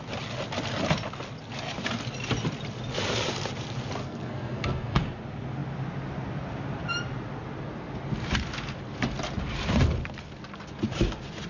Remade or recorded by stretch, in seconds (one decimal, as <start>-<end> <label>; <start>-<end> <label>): 0.0-4.0 recorded; 4.0-5.0 remade; 5.0-11.5 recorded